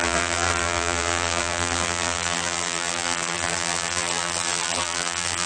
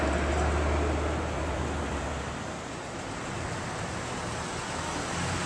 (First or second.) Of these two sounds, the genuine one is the second